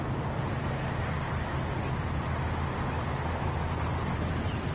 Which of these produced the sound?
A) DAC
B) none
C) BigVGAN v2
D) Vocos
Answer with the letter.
B